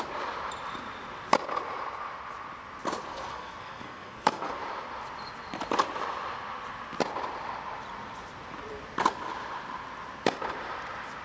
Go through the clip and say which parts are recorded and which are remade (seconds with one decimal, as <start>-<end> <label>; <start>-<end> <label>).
0.0-3.1 recorded; 3.1-4.5 remade; 4.5-11.2 recorded